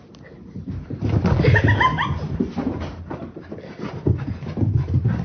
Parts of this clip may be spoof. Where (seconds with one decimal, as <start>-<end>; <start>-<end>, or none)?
none